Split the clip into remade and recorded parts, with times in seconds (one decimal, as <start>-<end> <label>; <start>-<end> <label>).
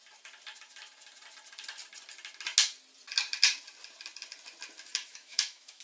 0.0-5.0 recorded; 5.0-5.8 remade